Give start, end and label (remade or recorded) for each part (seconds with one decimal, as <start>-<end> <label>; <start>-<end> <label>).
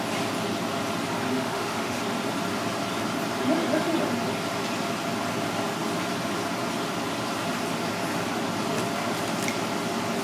0.0-1.3 recorded; 1.3-2.0 remade; 2.0-10.2 recorded